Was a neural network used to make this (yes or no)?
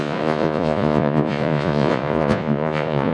yes